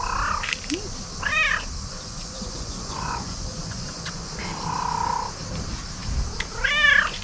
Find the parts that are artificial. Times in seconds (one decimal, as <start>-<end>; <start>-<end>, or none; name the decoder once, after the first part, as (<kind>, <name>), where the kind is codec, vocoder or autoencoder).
1.9-4.3 (vocoder, Vocos)